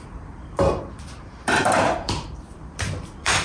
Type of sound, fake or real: fake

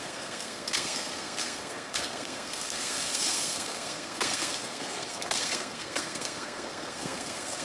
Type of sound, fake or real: fake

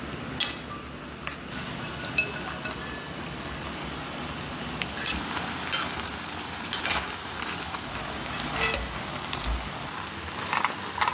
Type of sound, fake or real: real